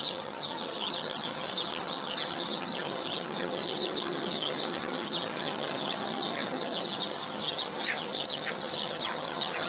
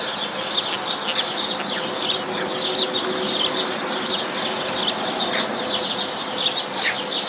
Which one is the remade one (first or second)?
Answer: first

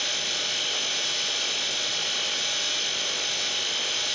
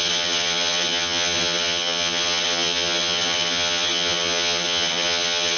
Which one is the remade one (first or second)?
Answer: second